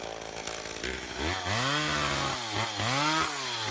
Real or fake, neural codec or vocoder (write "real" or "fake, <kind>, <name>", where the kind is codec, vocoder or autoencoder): real